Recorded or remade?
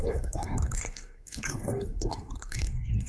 remade